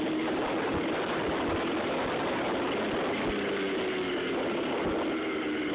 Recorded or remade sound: recorded